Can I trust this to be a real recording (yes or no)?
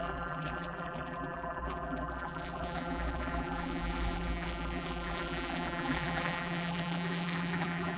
no